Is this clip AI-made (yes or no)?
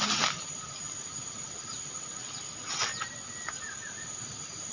no